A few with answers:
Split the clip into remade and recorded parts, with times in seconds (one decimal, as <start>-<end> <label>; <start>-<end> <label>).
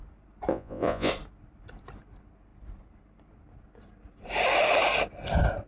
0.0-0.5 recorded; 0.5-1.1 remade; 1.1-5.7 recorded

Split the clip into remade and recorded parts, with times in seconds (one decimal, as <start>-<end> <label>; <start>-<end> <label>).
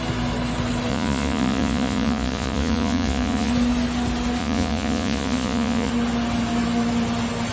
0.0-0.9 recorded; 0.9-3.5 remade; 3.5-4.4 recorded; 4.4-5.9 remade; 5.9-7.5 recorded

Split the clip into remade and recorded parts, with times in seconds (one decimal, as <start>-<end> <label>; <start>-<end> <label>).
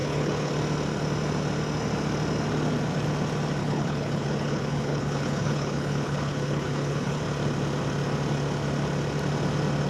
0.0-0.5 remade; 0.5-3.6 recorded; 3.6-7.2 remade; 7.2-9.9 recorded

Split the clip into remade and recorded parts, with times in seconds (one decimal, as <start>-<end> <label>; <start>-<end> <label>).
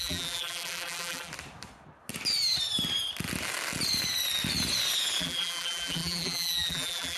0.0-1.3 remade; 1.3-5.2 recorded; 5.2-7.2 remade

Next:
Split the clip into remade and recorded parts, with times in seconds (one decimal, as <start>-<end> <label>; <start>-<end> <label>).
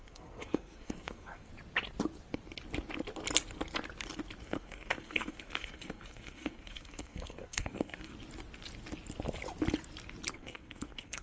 0.0-1.5 remade; 1.5-4.4 recorded; 4.4-8.1 remade; 8.1-10.3 recorded; 10.3-11.2 remade